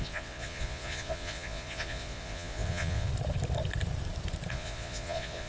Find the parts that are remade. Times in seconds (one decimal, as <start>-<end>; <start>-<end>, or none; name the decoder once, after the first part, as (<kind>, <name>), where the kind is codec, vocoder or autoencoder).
0.0-3.1 (vocoder, Vocos); 4.5-5.5